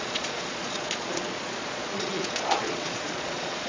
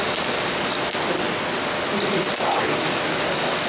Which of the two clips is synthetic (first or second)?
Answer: first